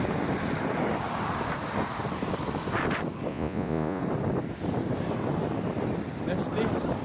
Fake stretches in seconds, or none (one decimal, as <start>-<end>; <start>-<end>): 3.3-4.0